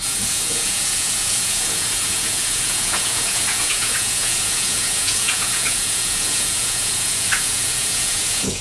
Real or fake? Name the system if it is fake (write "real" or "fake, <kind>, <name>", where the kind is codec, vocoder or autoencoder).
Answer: fake, vocoder, Vocos